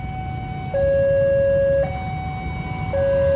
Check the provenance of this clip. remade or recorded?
recorded